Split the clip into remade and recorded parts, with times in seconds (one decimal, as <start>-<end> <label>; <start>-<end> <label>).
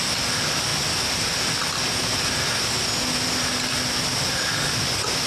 0.0-5.3 recorded